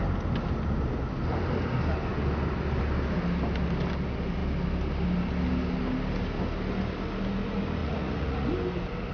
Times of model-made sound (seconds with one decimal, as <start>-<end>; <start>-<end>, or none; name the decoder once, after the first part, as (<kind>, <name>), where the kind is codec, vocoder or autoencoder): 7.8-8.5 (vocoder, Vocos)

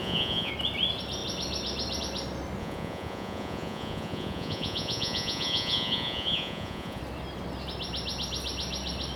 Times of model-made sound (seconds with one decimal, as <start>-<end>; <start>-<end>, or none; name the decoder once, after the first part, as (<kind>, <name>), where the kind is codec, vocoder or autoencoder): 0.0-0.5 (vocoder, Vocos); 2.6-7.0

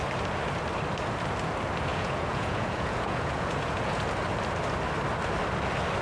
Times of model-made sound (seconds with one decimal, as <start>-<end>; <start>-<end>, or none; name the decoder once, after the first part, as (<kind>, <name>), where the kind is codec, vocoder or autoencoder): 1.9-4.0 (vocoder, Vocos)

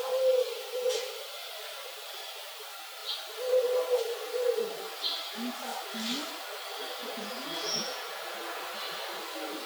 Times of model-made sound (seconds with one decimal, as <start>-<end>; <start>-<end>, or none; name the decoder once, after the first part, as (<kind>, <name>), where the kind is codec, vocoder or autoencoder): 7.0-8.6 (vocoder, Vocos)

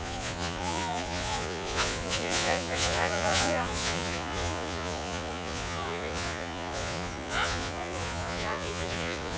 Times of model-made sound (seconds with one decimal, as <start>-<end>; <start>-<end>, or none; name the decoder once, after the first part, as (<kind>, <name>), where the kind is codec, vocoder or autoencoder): 0.0-9.4 (vocoder, Vocos)

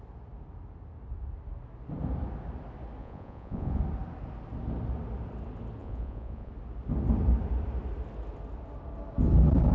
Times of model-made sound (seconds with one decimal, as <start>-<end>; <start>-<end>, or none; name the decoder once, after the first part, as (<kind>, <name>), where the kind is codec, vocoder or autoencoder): 3.0-3.8 (vocoder, Vocos); 5.8-6.5